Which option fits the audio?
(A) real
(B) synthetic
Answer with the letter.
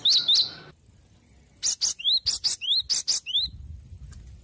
A